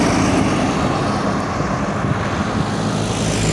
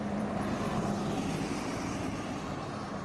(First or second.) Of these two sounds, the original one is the first